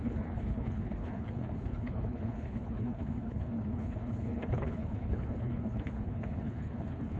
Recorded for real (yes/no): no